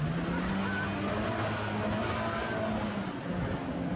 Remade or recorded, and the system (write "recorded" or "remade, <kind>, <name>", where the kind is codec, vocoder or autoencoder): recorded